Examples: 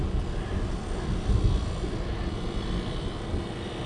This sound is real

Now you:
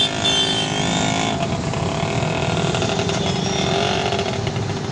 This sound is real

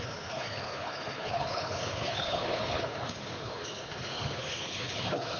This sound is fake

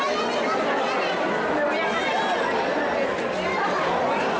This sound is real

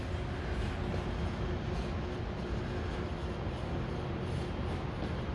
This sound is real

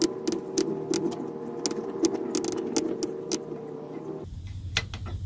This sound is real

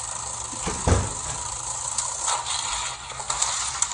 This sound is real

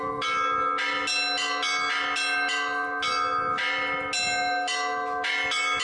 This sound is real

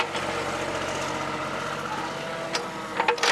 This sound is real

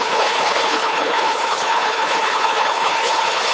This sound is fake